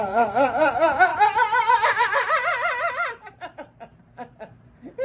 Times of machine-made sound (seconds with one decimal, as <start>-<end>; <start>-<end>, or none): 0.0-5.0